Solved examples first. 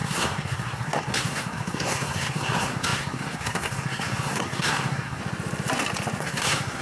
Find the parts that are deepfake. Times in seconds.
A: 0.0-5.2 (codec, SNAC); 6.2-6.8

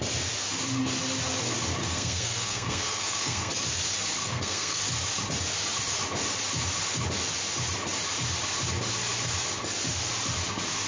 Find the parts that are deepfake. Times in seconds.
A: 1.8-3.5 (codec, SNAC); 4.2-4.8

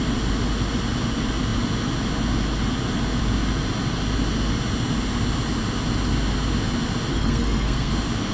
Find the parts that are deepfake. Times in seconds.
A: 7.1-7.9 (codec, SNAC)

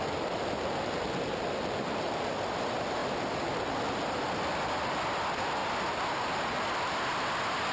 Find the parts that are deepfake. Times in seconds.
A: none

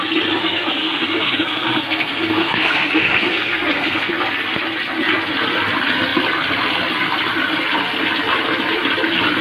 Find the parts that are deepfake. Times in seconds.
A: 0.4-4.1 (codec, SNAC)